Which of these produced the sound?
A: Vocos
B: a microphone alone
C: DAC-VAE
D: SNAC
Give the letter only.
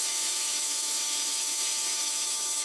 C